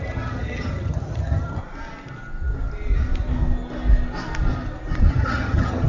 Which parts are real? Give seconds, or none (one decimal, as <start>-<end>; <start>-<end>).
1.6-5.1